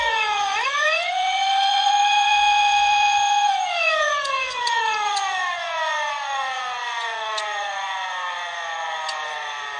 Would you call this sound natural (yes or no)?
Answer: no